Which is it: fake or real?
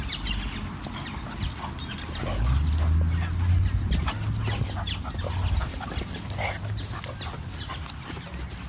real